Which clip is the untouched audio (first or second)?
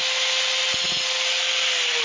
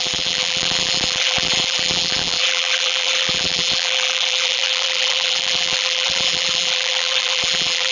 first